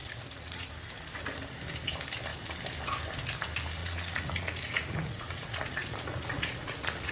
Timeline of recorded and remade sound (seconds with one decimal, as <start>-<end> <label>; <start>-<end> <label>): 0.0-0.7 remade; 0.7-3.8 recorded; 3.8-7.1 remade